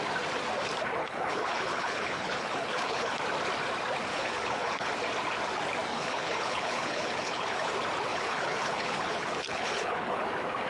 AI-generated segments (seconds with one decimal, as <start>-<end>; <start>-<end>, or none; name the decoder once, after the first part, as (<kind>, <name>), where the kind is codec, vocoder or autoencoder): 1.0-3.2 (codec, HILCodec); 4.1-4.9; 5.9-7.7; 8.1-10.2